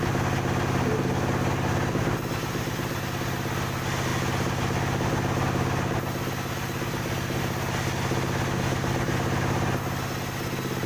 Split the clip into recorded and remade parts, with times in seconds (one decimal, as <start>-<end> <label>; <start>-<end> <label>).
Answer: 0.0-10.9 recorded